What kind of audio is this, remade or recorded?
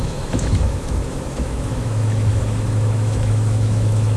remade